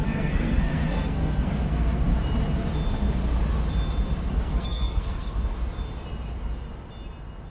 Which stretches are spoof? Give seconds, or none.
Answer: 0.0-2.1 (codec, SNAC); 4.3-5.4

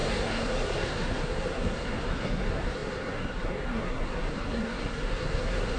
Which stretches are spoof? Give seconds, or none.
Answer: 0.0-5.8 (codec, SNAC)

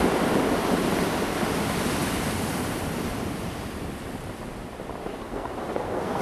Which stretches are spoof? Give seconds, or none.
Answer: 5.1-6.2 (codec, SNAC)

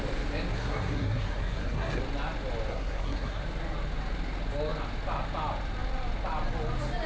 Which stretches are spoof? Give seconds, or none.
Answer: 0.5-2.0 (codec, SNAC); 2.7-3.4

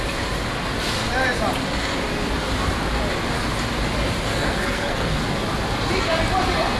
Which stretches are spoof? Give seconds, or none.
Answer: 4.3-5.2 (codec, SNAC)